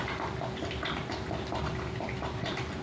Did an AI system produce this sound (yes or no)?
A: no